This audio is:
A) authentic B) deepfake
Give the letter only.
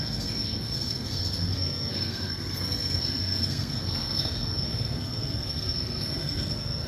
B